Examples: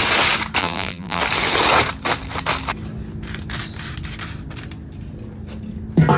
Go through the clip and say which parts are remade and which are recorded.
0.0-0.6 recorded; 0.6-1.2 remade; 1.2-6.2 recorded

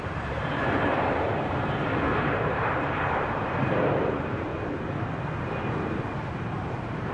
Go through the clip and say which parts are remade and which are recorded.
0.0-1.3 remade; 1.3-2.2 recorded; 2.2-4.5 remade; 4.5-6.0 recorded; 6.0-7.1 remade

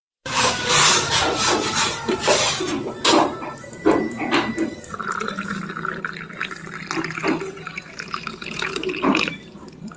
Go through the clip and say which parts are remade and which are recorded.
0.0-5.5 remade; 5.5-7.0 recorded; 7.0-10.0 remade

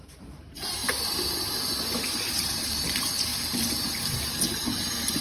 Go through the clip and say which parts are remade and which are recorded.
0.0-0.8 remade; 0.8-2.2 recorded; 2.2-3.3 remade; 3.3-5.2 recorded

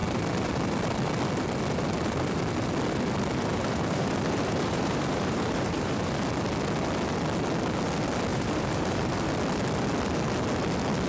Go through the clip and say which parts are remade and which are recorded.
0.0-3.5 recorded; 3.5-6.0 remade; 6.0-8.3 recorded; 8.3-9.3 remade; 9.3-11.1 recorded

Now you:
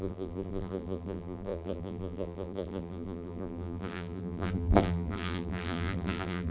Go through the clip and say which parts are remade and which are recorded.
0.0-6.5 remade